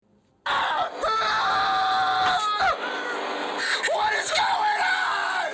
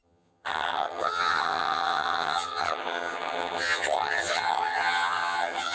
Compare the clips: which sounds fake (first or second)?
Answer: second